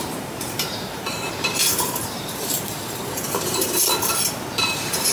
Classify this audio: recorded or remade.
remade